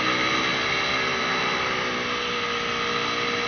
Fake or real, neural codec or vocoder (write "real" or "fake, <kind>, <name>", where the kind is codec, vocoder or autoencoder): real